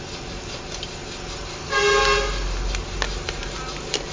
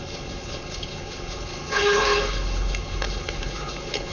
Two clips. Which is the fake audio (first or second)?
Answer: second